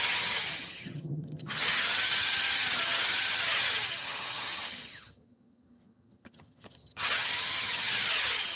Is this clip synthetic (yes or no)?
yes